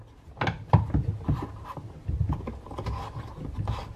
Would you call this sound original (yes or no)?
yes